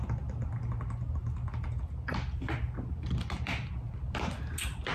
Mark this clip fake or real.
real